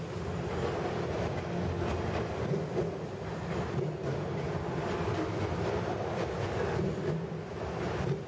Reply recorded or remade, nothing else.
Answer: recorded